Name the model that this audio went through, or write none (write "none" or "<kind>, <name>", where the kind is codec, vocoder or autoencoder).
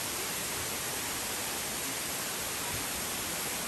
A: none